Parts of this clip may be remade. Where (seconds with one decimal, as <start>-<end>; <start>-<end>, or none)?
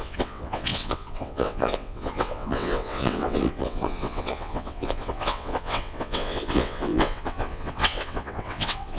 0.0-9.0